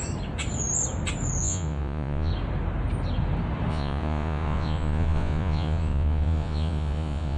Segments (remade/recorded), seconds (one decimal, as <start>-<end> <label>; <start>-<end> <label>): 0.0-1.4 recorded; 1.4-2.3 remade; 2.3-3.7 recorded; 3.7-7.4 remade